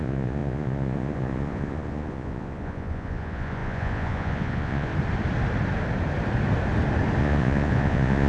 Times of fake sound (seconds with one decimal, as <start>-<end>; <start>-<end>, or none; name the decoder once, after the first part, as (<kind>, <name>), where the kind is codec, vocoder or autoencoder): 0.0-4.9 (vocoder, Vocos); 7.2-8.3